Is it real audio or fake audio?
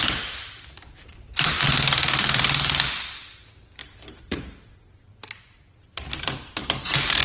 fake